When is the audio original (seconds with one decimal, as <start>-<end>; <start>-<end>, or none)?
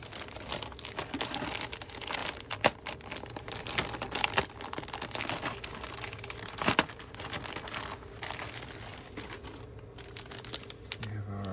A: 0.0-11.5